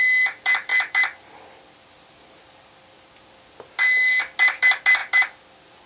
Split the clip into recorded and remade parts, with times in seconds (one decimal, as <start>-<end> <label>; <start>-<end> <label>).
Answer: 0.0-5.9 recorded